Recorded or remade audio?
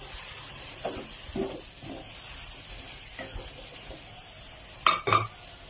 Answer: recorded